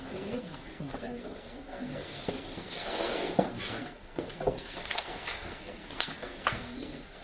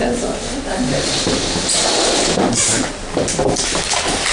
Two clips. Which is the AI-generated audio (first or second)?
first